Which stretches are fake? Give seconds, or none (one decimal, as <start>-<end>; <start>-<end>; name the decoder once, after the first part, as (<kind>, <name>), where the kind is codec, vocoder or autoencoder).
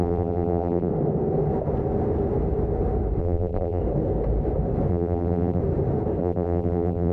0.0-0.9 (vocoder, BigVGAN v2); 3.2-3.8; 4.9-5.6; 6.2-7.1